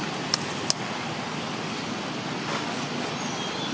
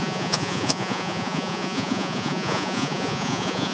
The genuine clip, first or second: first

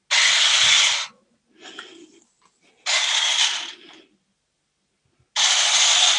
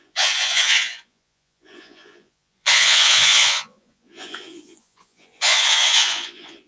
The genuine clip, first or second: first